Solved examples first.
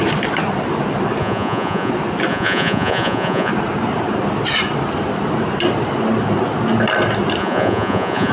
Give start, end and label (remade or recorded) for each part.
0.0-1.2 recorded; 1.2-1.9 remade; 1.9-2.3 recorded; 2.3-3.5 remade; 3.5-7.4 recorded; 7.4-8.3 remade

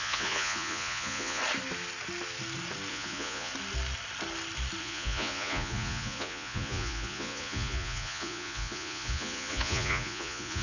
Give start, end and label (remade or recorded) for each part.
0.0-1.4 remade; 1.4-2.9 recorded; 2.9-3.5 remade; 3.5-4.8 recorded; 4.8-10.6 remade